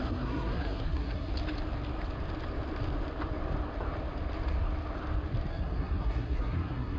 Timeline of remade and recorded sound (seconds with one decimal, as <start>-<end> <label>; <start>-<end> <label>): 0.0-1.3 remade; 1.3-5.5 recorded; 5.5-7.0 remade